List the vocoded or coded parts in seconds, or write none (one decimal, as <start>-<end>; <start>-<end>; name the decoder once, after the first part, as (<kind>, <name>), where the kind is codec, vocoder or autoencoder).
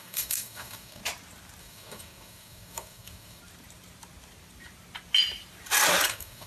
0.0-1.0 (codec, DAC); 1.6-3.4; 6.1-6.5